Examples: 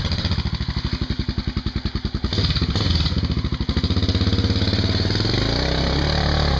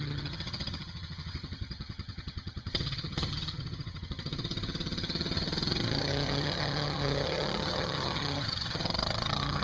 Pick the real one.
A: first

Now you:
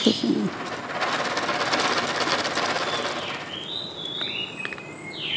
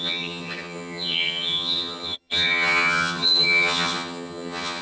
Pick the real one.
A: first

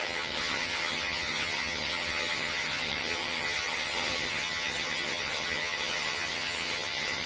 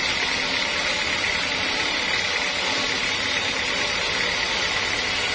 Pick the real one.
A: second